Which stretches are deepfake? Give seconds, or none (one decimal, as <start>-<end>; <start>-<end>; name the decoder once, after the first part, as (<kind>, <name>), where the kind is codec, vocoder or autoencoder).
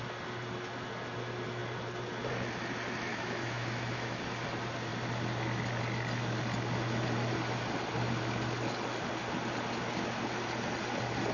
3.1-4.2 (autoencoder, DAC-VAE)